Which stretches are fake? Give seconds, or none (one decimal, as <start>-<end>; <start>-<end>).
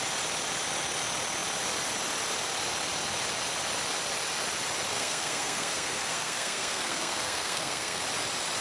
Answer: 4.9-8.0